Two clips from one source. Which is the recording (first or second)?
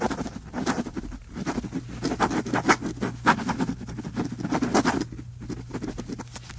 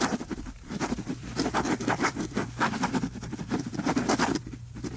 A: first